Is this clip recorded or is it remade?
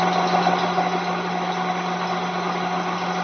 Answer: recorded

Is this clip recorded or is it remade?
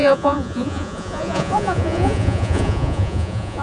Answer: remade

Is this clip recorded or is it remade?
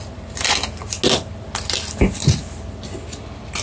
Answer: recorded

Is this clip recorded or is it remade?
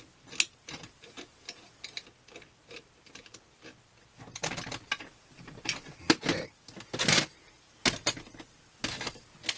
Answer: recorded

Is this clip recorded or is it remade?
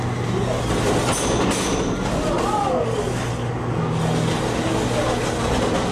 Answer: recorded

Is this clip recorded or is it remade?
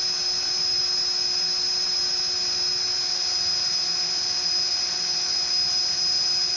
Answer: recorded